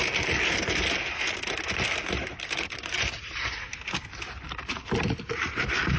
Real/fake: real